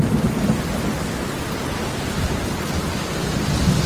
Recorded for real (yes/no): yes